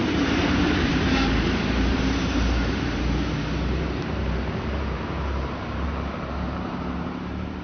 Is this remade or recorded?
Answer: remade